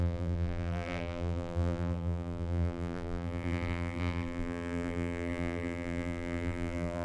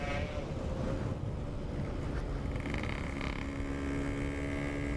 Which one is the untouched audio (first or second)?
second